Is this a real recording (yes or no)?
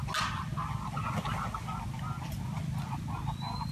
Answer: yes